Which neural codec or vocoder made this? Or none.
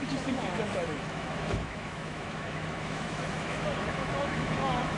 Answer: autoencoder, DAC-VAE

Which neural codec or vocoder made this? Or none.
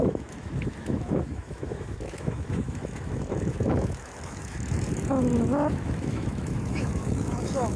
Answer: autoencoder, DAC-VAE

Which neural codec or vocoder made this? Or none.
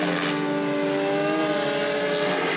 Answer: none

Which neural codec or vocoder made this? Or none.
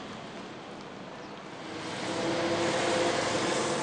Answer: none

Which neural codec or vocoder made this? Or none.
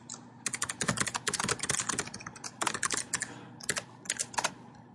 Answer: none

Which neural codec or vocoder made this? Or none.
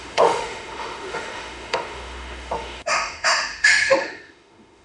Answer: autoencoder, DAC-VAE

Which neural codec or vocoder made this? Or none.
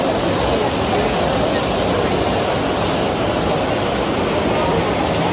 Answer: none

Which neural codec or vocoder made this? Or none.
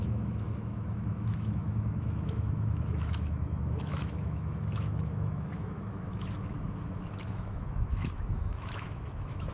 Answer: autoencoder, DAC-VAE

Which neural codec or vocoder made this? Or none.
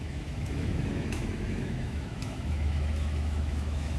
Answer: autoencoder, DAC-VAE